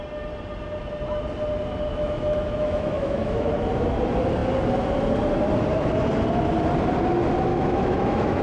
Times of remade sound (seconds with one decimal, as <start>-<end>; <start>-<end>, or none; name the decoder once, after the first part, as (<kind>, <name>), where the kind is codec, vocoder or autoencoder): 1.9-3.5 (autoencoder, DAC-VAE); 7.5-8.4